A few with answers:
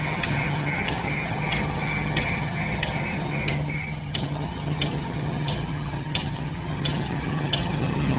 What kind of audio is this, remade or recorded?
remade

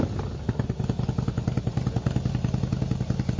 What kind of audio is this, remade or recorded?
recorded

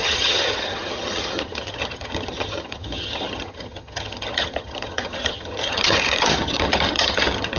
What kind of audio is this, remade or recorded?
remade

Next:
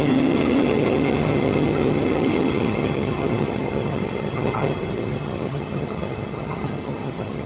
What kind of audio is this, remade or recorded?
remade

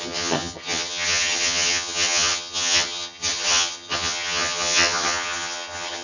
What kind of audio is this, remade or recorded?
remade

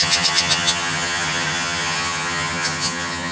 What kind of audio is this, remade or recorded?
remade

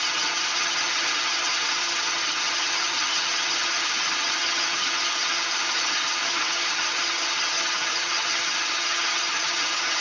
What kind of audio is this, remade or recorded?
remade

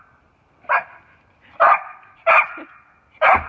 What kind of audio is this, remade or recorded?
recorded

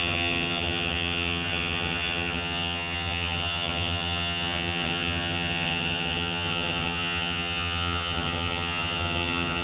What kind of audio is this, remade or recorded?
remade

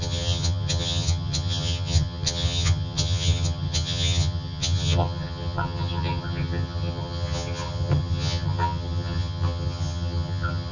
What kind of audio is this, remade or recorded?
remade